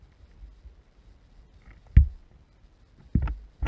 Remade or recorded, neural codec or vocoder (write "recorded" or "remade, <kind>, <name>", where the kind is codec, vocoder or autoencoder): recorded